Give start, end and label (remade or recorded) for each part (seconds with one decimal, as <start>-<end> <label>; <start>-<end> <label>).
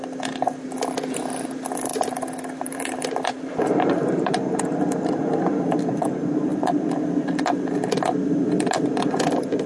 0.0-1.9 recorded; 1.9-4.4 remade; 4.4-9.7 recorded